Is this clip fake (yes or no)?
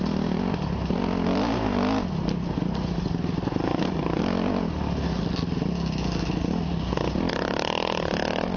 no